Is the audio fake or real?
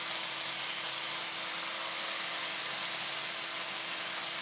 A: real